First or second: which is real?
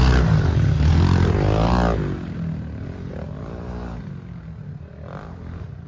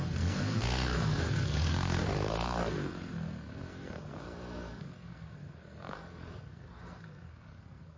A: first